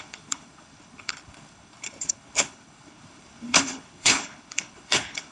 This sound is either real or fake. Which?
fake